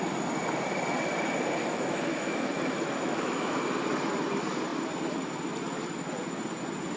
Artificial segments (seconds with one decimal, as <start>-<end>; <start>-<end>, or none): 1.6-3.6